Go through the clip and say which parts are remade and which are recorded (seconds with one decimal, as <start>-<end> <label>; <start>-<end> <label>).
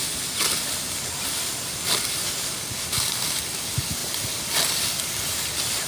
0.0-5.9 recorded